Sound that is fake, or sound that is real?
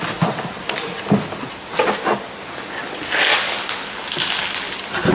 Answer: real